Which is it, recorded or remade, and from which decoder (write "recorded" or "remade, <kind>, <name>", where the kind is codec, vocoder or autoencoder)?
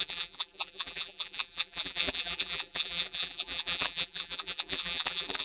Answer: remade, vocoder, BigVGAN v2